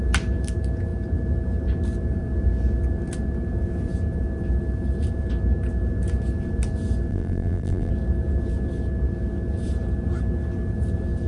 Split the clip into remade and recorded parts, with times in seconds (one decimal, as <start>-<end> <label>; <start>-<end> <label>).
0.0-7.1 recorded; 7.1-7.9 remade; 7.9-11.3 recorded